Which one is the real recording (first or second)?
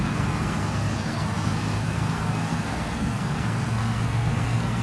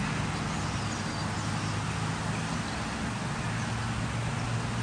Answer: second